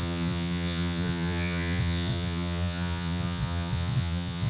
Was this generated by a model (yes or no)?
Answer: yes